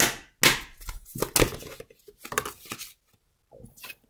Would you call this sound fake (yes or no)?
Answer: no